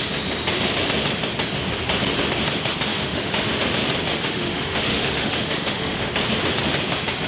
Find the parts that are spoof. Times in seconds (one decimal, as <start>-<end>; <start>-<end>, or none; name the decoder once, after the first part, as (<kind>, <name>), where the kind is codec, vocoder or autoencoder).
2.9-3.5 (autoencoder, DAC-VAE); 4.1-6.1